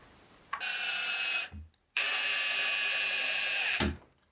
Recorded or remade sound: recorded